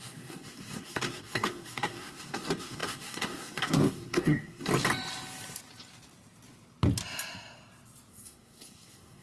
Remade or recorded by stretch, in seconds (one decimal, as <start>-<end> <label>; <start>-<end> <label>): 0.0-4.7 remade; 4.7-8.1 recorded; 8.1-9.2 remade